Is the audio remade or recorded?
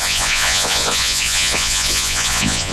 remade